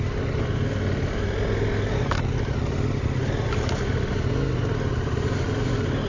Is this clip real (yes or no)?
yes